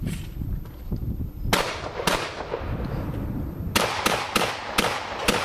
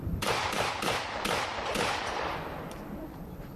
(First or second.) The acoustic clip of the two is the first